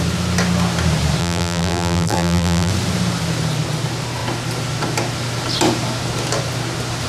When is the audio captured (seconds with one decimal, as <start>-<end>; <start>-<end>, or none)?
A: 0.0-1.2; 2.7-7.1